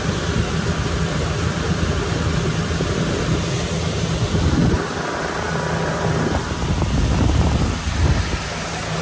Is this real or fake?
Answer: real